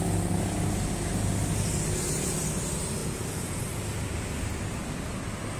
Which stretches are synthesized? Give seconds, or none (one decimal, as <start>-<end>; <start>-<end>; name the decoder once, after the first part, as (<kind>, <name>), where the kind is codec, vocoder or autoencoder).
3.0-3.6 (vocoder, Vocos)